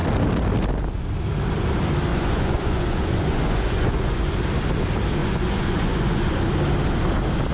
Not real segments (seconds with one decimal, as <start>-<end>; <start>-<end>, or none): 2.1-4.3; 5.2-6.4